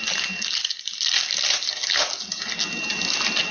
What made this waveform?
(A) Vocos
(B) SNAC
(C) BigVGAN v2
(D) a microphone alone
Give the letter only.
D